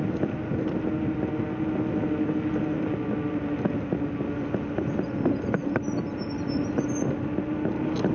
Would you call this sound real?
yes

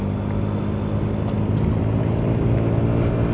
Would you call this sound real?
yes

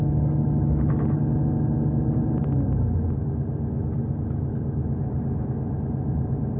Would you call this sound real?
yes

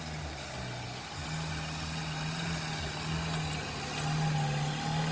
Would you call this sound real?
yes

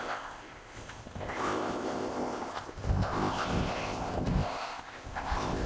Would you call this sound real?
no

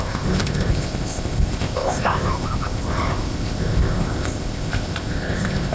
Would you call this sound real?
no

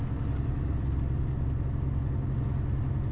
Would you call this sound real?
yes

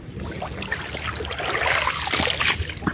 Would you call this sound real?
yes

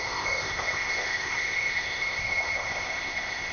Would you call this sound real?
no